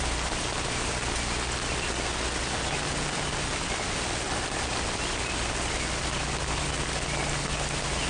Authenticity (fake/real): real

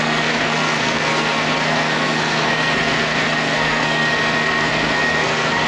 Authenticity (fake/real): fake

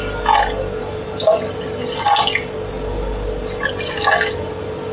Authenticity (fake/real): real